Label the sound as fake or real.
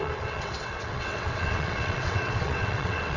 fake